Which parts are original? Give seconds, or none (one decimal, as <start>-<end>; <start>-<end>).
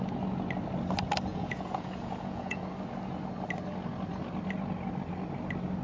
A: 0.0-1.3; 2.6-5.8